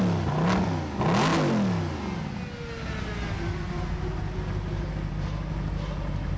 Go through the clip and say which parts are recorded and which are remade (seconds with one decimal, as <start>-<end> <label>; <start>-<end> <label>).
0.0-6.4 recorded

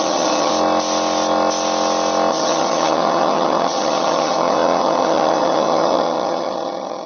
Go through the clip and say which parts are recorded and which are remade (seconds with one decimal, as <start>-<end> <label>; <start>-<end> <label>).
0.0-0.5 remade; 0.5-2.3 recorded; 2.3-7.1 remade

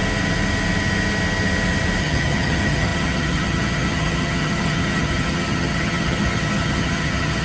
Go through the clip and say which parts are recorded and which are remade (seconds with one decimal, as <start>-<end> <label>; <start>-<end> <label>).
0.0-2.0 recorded; 2.0-7.4 remade

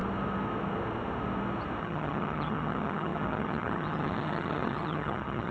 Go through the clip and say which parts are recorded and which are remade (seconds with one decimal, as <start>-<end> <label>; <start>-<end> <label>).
0.0-1.8 recorded; 1.8-5.5 remade

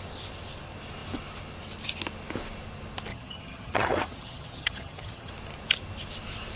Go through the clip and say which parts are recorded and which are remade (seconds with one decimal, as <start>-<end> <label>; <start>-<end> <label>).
0.0-3.1 recorded; 3.1-5.3 remade; 5.3-6.6 recorded